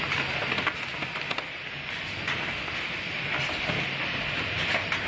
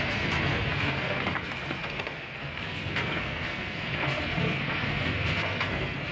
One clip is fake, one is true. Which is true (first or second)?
first